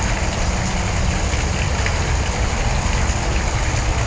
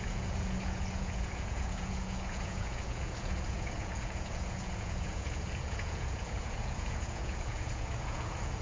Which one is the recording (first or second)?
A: first